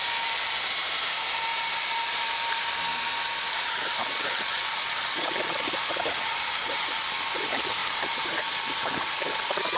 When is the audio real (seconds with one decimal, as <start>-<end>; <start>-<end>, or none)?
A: 0.0-1.5; 2.7-7.8; 8.4-9.8